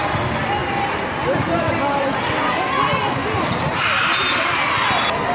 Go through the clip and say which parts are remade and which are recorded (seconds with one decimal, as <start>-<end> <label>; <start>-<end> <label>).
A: 0.0-0.6 recorded; 0.6-1.7 remade; 1.7-3.2 recorded; 3.2-4.6 remade; 4.6-5.3 recorded